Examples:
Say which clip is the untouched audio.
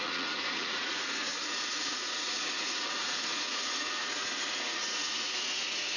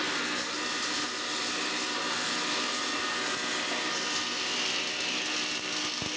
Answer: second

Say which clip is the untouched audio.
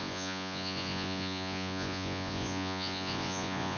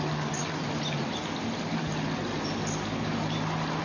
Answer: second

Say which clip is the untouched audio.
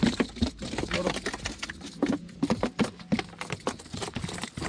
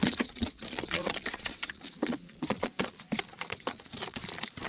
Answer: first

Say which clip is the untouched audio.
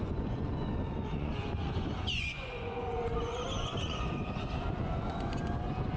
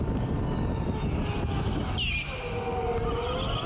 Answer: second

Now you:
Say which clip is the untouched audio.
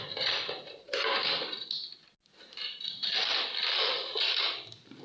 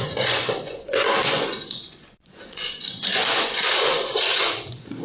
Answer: first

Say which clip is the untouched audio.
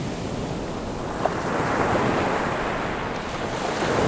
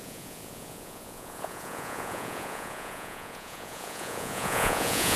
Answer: first